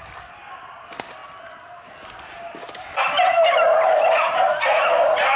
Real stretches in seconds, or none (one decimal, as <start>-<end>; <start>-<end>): 0.0-5.4